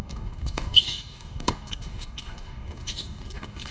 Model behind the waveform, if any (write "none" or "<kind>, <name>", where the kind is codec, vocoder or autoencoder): codec, DAC